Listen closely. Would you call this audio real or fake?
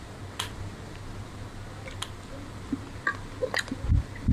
real